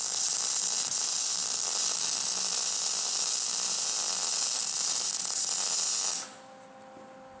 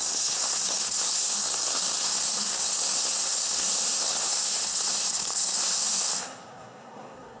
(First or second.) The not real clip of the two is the second